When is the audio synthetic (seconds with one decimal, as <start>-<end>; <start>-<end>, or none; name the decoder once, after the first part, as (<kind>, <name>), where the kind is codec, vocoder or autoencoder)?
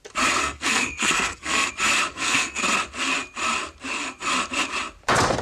0.4-1.7 (codec, SNAC); 2.1-2.6